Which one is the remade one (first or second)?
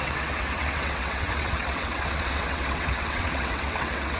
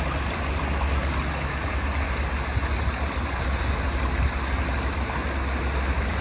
first